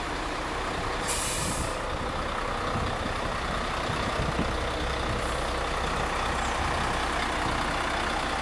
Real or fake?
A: real